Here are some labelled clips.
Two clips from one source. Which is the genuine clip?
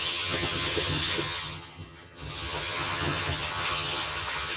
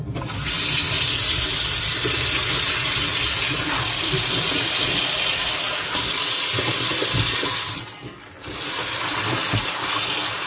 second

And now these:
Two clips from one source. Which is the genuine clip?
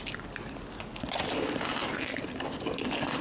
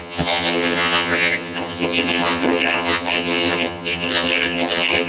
first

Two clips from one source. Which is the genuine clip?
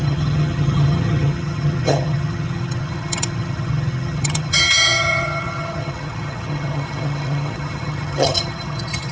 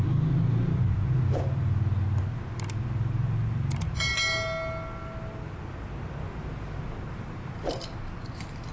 second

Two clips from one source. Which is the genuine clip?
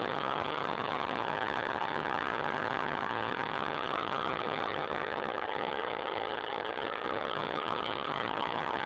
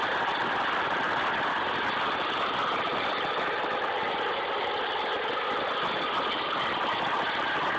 second